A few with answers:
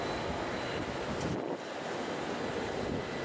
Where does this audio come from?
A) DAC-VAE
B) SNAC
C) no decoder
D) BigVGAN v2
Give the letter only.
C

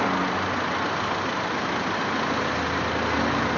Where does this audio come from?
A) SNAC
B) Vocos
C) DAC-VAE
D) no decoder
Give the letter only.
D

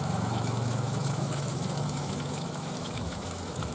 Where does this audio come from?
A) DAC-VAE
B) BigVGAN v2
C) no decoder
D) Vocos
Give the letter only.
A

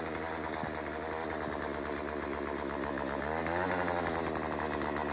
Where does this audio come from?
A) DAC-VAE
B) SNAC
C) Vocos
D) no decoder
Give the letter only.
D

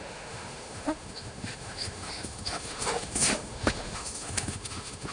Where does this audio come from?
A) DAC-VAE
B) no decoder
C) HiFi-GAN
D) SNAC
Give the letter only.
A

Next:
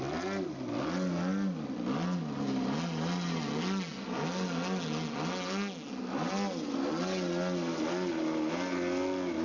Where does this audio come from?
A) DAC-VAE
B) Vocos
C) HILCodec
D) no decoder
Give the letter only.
D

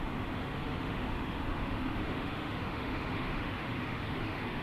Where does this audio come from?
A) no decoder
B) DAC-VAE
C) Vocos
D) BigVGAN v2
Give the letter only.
B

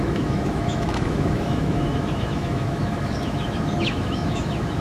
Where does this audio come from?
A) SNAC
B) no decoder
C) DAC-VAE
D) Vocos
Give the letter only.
C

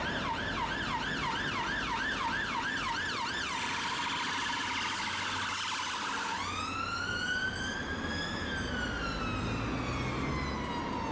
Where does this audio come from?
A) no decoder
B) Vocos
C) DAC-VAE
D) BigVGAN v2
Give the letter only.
A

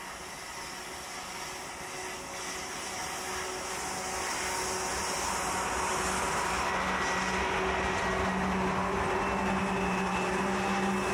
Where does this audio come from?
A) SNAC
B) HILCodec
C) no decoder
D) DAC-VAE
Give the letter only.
C